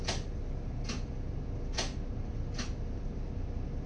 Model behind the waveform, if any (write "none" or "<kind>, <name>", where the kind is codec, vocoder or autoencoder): none